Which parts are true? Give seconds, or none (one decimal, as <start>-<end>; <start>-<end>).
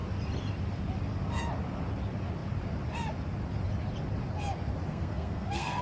0.0-4.9